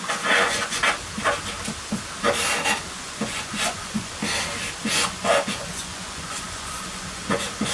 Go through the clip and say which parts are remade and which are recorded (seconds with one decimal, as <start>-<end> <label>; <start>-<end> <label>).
0.0-0.8 remade; 0.8-2.9 recorded; 2.9-4.2 remade; 4.2-4.8 recorded; 4.8-7.7 remade